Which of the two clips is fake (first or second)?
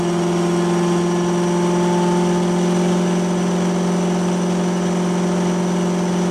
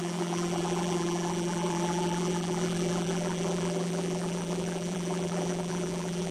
second